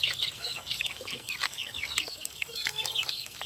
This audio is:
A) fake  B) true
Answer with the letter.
A